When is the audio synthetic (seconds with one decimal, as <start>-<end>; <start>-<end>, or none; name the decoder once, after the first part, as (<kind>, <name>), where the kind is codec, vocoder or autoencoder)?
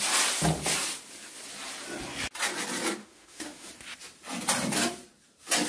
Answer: 3.0-3.7 (autoencoder, DAC-VAE)